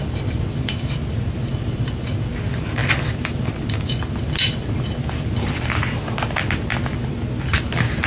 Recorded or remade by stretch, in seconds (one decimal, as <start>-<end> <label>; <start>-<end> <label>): 0.0-1.5 recorded; 1.5-2.0 remade; 2.0-8.1 recorded